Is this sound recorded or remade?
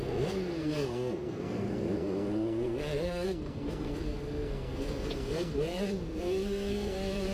remade